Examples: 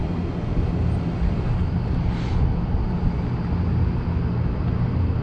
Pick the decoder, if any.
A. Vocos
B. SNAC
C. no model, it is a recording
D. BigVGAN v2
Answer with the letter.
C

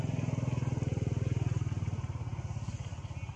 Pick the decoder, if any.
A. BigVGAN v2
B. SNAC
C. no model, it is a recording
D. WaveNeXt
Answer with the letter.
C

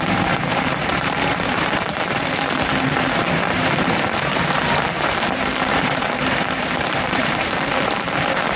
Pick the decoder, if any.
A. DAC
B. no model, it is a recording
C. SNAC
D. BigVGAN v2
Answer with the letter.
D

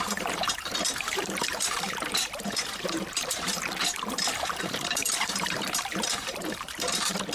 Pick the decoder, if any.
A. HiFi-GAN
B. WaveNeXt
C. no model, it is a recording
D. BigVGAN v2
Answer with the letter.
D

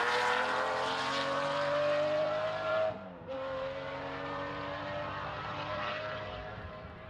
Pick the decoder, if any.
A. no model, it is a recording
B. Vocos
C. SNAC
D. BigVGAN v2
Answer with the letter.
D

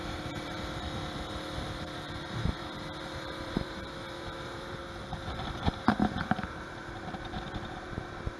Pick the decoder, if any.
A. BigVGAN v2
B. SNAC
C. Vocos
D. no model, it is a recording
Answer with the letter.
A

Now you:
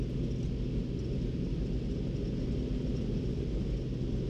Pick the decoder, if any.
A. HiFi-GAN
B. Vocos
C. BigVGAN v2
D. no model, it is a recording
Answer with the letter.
D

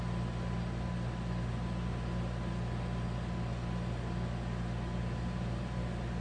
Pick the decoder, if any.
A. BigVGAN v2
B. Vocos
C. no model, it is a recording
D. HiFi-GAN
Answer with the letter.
C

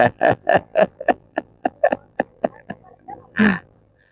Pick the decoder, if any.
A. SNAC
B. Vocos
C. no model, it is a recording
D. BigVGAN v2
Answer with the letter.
D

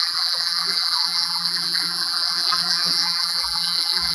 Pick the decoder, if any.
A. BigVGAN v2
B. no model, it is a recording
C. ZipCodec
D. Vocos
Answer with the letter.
A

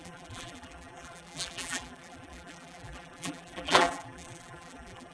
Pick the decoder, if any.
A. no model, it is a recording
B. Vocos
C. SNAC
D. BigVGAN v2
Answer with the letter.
D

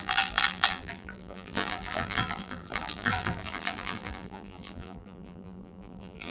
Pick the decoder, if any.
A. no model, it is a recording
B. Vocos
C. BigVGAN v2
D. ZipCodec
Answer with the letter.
C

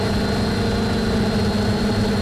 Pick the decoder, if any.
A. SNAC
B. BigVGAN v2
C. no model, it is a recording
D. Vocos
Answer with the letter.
C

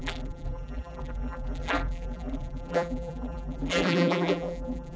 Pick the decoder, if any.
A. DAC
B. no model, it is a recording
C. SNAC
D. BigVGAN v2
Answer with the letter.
D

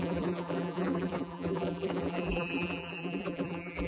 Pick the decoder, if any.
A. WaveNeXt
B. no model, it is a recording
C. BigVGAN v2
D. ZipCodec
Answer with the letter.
C